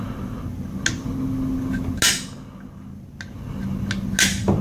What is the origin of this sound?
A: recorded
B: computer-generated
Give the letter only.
A